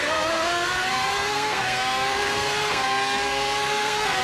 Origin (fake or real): fake